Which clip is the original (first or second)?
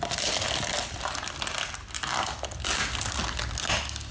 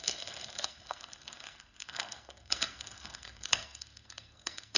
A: first